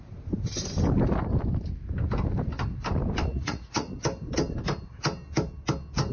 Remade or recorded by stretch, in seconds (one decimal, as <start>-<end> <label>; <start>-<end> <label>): 0.0-3.3 recorded; 3.3-3.9 remade; 3.9-6.1 recorded